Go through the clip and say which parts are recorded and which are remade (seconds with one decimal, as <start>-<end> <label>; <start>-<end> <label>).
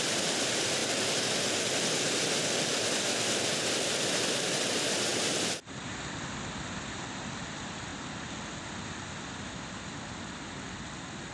0.0-11.3 recorded